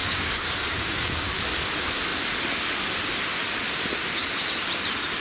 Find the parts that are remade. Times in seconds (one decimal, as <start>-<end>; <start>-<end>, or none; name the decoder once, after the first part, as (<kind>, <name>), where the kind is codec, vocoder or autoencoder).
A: 0.0-1.4 (codec, DAC)